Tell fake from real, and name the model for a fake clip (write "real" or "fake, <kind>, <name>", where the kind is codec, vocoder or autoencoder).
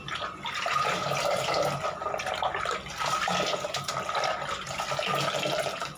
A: real